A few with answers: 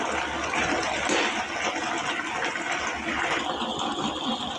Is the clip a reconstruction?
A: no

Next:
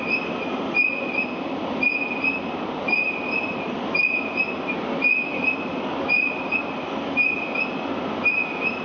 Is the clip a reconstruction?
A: no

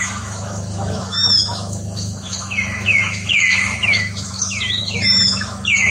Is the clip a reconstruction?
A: yes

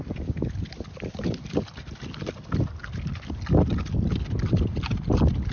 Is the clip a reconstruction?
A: no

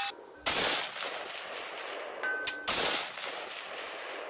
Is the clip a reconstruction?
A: no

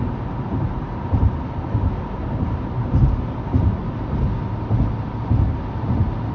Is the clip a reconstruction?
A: no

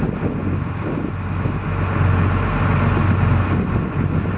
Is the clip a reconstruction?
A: no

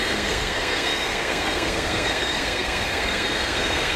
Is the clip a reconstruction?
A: yes